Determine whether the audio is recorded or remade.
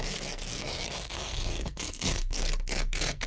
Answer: remade